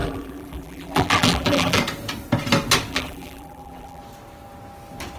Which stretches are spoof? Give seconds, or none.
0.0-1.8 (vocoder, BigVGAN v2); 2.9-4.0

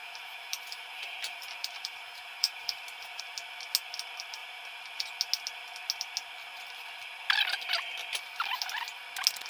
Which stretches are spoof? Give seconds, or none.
0.0-3.2 (vocoder, BigVGAN v2)

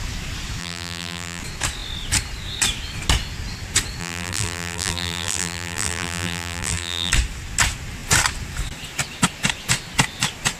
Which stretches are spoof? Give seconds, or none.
0.6-1.4 (vocoder, BigVGAN v2); 4.0-7.1

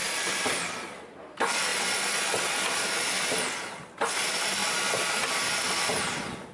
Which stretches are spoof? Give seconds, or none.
none

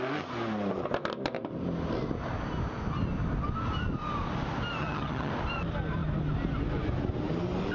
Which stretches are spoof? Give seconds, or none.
4.8-5.3 (vocoder, HiFi-GAN)

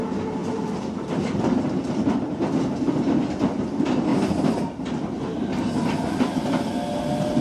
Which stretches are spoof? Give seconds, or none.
0.4-1.9 (vocoder, BigVGAN v2); 4.1-6.7